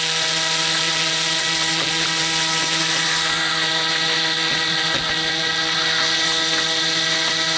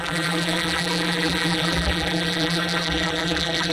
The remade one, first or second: second